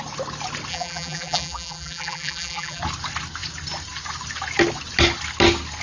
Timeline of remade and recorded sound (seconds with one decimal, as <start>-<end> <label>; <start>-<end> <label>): 0.0-0.7 recorded; 0.7-2.8 remade; 2.8-5.8 recorded

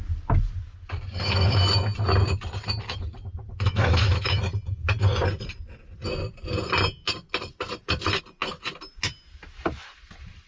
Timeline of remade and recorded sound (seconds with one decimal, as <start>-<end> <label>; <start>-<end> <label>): 0.0-3.7 recorded; 3.7-4.4 remade; 4.4-10.5 recorded